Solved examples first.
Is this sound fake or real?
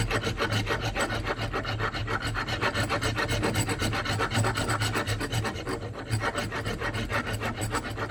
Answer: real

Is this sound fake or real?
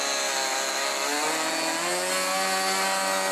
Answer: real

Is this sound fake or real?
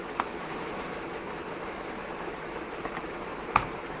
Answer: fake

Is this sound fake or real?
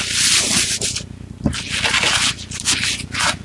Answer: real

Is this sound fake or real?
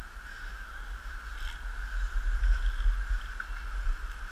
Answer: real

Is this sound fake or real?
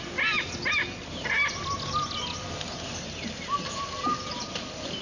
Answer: real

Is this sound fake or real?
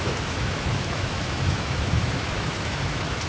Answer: fake